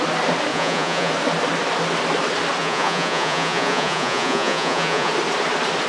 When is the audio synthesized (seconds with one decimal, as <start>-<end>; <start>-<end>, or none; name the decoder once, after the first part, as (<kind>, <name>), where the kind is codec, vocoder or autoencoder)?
0.5-1.1 (vocoder, Vocos); 2.6-5.1